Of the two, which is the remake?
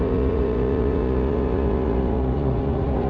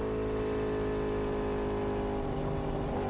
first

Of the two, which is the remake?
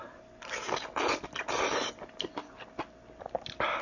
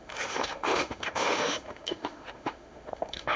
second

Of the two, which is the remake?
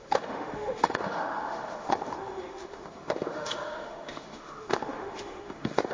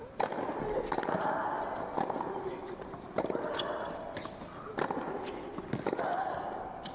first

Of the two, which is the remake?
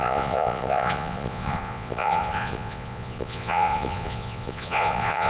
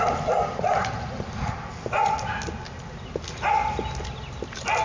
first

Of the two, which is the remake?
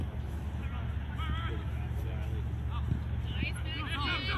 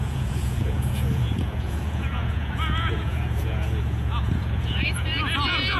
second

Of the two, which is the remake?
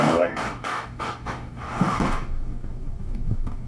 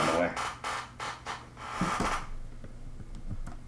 first